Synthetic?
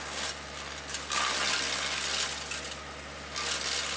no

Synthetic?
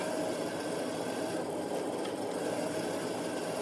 no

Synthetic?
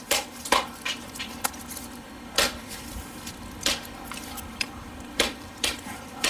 yes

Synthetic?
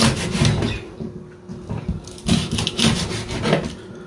no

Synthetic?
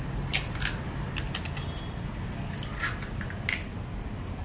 no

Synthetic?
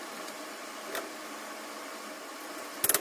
no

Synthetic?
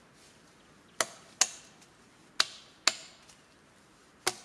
no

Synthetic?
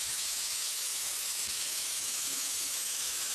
yes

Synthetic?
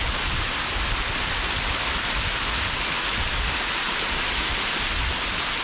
no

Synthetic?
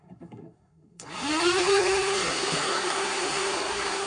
yes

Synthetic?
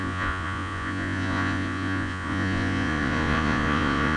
yes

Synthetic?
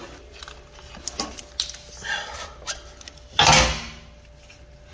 no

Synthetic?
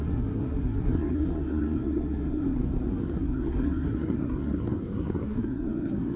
yes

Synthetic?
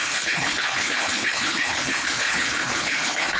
yes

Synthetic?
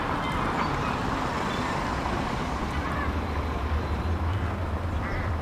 no